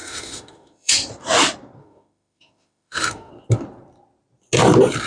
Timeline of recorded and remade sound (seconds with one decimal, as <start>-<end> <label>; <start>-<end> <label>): 0.0-0.9 remade; 0.9-1.8 recorded; 1.8-3.3 remade; 3.3-5.1 recorded